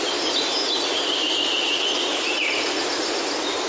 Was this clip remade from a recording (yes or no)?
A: no